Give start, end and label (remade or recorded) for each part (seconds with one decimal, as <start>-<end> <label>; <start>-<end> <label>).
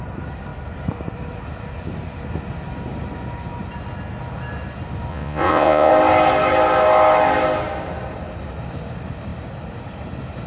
0.0-5.1 recorded; 5.1-5.9 remade; 5.9-10.5 recorded